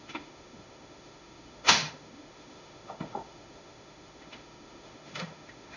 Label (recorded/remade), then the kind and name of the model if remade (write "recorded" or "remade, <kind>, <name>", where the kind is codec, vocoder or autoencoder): remade, autoencoder, DAC-VAE